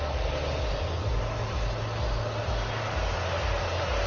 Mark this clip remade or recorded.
recorded